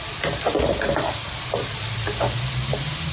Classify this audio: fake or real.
real